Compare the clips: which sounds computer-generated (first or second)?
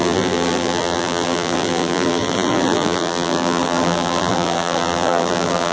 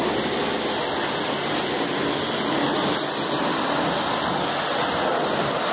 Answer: first